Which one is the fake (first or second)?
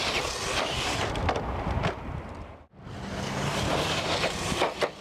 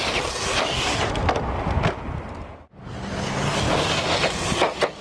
first